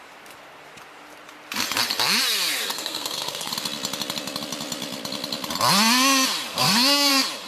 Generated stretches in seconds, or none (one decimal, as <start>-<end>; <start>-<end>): 2.7-3.5; 6.5-7.1